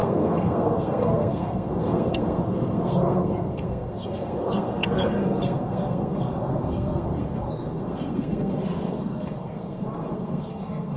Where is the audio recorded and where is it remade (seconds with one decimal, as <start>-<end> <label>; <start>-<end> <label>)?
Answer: 0.0-11.0 remade